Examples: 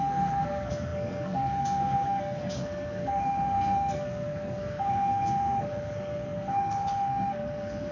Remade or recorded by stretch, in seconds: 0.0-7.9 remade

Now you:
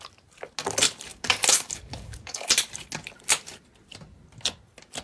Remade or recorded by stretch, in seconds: 0.0-1.1 recorded; 1.1-2.5 remade; 2.5-5.0 recorded

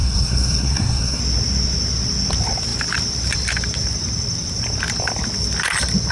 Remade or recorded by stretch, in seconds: 0.0-1.2 remade; 1.2-6.1 recorded

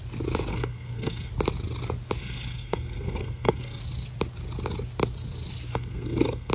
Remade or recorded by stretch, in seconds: 0.0-0.5 recorded; 0.5-1.3 remade; 1.3-2.2 recorded; 2.2-3.8 remade; 3.8-5.7 recorded; 5.7-6.5 remade

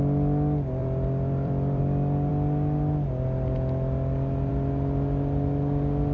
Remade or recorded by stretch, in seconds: 0.0-0.8 recorded; 0.8-1.8 remade; 1.8-6.1 recorded